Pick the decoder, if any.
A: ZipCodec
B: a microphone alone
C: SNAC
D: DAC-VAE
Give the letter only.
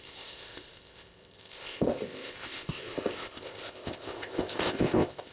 A